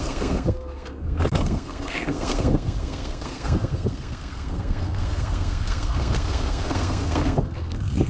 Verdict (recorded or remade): remade